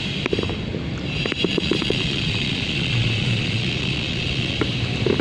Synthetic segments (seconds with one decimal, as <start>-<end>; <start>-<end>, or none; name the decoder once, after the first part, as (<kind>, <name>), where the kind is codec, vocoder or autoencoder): 1.5-4.6 (vocoder, Vocos)